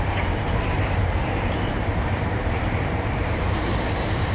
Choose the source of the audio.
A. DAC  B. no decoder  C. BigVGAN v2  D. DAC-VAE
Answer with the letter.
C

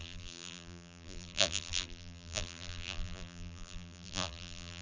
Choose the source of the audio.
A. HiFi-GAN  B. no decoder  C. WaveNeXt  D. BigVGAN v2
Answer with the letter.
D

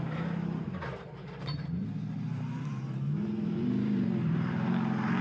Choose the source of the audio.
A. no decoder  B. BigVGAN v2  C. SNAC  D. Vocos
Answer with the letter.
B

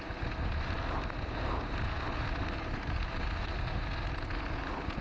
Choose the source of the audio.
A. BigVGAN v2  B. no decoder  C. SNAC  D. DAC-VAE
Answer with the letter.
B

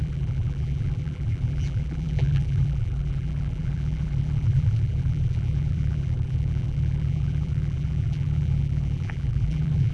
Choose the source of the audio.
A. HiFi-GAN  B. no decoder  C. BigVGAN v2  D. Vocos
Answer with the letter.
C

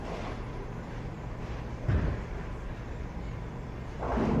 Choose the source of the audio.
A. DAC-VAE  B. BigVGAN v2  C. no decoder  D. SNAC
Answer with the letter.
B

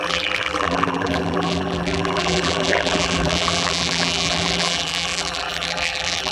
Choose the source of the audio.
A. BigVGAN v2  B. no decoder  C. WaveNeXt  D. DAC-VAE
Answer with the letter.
A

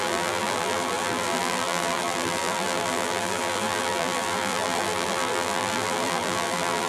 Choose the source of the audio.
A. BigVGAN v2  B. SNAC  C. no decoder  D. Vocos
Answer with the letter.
A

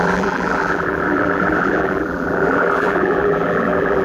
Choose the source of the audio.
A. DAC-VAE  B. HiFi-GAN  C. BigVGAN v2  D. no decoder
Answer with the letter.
C